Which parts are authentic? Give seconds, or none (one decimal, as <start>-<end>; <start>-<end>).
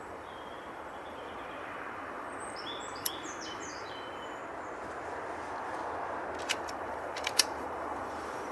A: 4.4-6.4